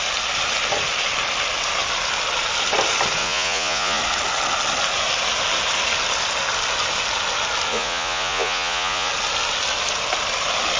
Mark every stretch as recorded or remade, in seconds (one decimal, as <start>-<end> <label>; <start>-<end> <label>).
0.0-3.2 recorded; 3.2-4.0 remade; 4.0-7.7 recorded; 7.7-9.1 remade; 9.1-10.8 recorded

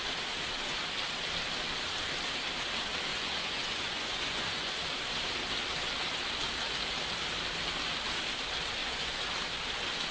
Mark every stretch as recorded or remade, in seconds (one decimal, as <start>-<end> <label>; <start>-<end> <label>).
0.0-3.1 recorded; 3.1-4.7 remade; 4.7-8.8 recorded; 8.8-9.3 remade; 9.3-10.1 recorded

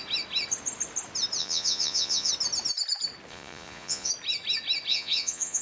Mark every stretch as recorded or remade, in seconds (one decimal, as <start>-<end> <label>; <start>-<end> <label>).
0.0-1.4 recorded; 1.4-2.3 remade; 2.3-3.3 recorded; 3.3-4.1 remade; 4.1-4.9 recorded; 4.9-5.6 remade

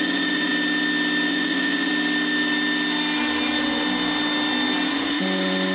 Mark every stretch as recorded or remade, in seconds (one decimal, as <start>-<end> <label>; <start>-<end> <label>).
0.0-0.5 remade; 0.5-1.3 recorded; 1.3-1.9 remade; 1.9-4.9 recorded; 4.9-5.7 remade

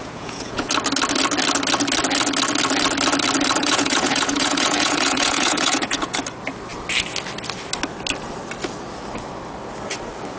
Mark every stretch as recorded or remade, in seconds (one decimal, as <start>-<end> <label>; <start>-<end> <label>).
0.0-0.7 remade; 0.7-3.6 recorded; 3.6-6.2 remade; 6.2-10.4 recorded

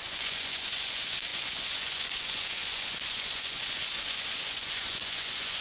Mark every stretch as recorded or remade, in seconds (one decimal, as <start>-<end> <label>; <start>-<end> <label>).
0.0-5.6 remade

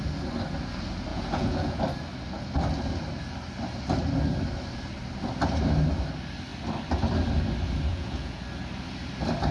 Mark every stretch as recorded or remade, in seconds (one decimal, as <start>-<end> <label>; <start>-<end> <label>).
0.0-1.1 recorded; 1.1-1.8 remade; 1.8-7.9 recorded; 7.9-8.4 remade; 8.4-9.5 recorded

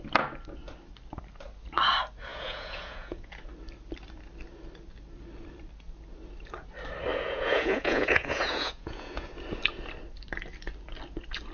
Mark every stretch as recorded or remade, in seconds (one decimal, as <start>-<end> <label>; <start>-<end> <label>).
0.0-2.3 recorded; 2.3-3.3 remade; 3.3-7.1 recorded; 7.1-9.3 remade; 9.3-11.5 recorded